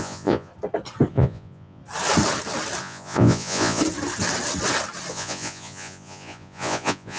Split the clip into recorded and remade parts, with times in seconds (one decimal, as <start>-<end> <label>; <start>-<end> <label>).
0.0-0.5 remade; 0.5-1.1 recorded; 1.1-1.8 remade; 1.8-2.8 recorded; 2.8-3.8 remade; 3.8-5.1 recorded; 5.1-7.2 remade